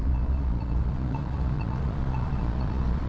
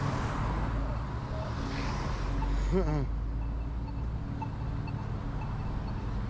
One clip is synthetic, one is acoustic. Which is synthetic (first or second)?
first